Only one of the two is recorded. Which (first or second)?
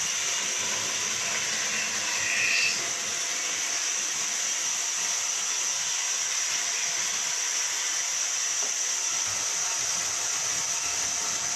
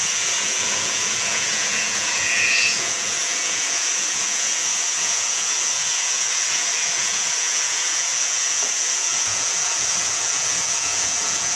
first